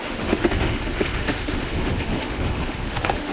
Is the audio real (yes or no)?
no